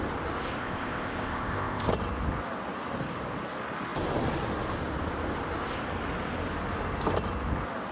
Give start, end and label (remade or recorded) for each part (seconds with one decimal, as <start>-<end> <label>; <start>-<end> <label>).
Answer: 0.0-0.6 recorded; 0.6-1.9 remade; 1.9-7.9 recorded